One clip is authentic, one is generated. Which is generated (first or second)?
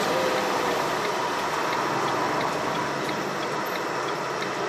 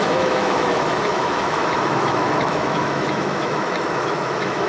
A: second